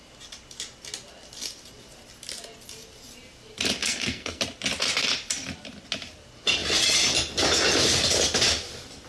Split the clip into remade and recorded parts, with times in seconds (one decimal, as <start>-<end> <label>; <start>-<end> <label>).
0.0-3.8 recorded; 3.8-4.4 remade; 4.4-9.1 recorded